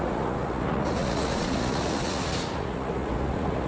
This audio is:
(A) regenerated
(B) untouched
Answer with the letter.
A